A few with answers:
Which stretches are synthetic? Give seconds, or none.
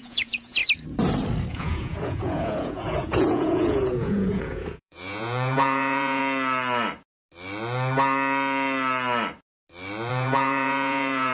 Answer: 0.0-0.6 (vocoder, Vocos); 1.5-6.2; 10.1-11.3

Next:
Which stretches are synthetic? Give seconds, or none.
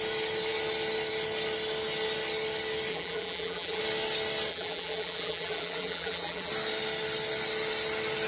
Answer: 2.9-3.8 (vocoder, BigVGAN v2); 4.5-6.5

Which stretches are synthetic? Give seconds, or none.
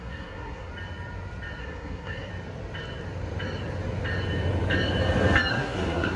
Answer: 0.0-0.7 (codec, SNAC); 1.6-2.3; 5.5-6.2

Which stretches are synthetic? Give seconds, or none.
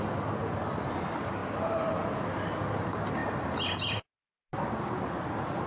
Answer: none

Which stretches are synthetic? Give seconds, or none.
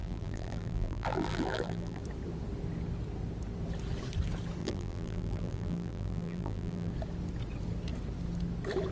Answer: 0.0-2.0 (vocoder, BigVGAN v2); 4.6-6.9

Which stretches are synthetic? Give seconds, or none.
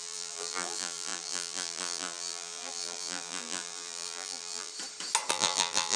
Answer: 0.0-4.7 (vocoder, BigVGAN v2); 5.3-6.0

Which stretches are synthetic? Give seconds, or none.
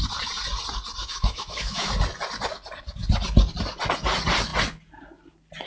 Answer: 1.0-1.9 (autoencoder, DAC-VAE)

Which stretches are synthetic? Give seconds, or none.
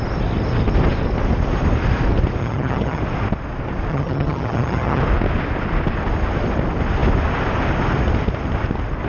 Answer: 2.4-3.0 (vocoder, HiFi-GAN); 3.9-5.0